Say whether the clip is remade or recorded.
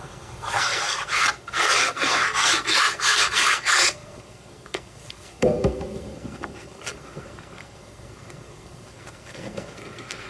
remade